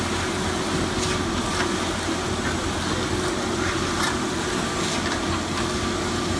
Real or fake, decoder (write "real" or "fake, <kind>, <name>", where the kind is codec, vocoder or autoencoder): real